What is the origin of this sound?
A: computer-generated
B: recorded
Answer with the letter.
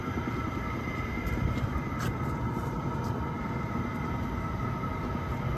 B